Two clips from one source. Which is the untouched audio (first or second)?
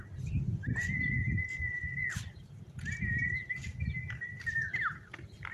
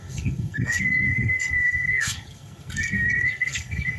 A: first